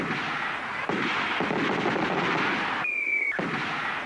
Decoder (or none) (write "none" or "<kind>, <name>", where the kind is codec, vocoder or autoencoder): none